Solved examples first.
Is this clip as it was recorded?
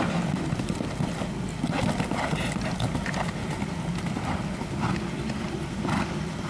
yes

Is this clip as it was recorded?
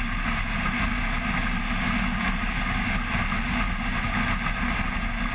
yes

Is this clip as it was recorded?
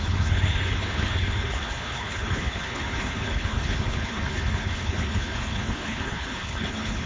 no